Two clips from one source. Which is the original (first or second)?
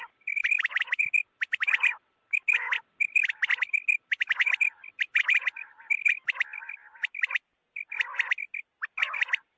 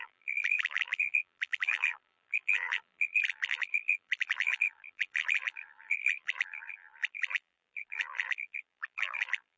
first